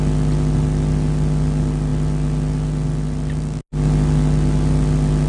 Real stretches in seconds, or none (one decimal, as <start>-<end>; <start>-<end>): 0.0-5.3